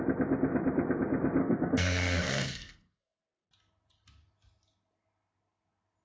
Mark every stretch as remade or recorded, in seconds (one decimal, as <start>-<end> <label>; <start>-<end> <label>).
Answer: 0.0-1.4 recorded; 1.4-3.2 remade; 3.2-6.0 recorded